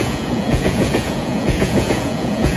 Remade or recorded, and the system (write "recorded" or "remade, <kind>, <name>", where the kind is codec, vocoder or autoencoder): remade, vocoder, Vocos